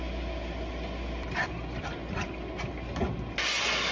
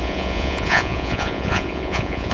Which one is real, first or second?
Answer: first